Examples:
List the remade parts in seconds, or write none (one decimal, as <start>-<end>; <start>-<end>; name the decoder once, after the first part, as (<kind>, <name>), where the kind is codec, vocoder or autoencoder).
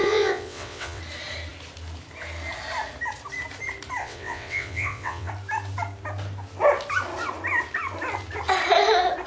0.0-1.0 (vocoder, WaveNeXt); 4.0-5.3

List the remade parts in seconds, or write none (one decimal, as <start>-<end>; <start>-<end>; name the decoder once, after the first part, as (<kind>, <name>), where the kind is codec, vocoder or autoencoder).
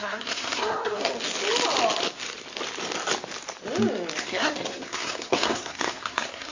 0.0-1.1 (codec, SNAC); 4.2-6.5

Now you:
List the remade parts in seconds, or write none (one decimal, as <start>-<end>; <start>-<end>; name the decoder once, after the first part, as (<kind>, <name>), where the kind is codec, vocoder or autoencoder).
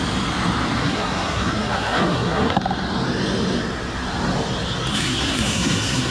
0.8-2.6 (codec, SNAC); 4.9-6.1